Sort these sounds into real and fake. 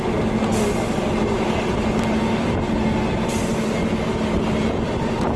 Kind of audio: real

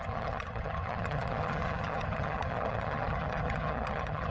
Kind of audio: fake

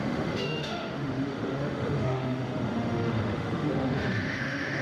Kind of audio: fake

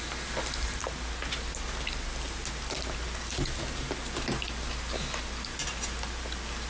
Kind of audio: real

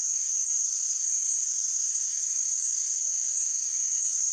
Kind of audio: fake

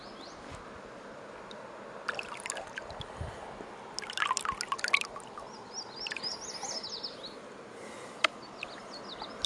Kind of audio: real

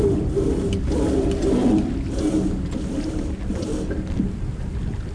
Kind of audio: real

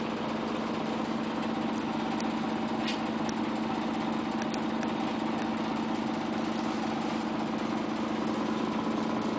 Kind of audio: real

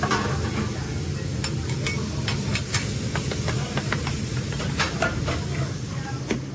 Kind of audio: real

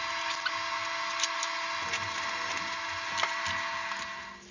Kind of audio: real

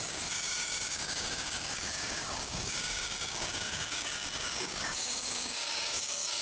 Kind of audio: fake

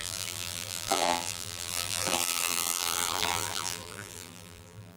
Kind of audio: fake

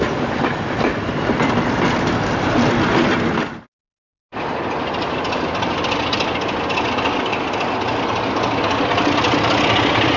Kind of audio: real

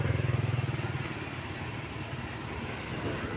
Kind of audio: real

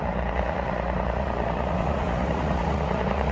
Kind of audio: fake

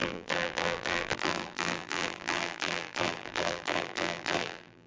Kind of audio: fake